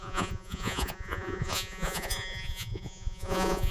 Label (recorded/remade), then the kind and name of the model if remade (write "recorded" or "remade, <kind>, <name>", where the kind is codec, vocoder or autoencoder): remade, vocoder, Vocos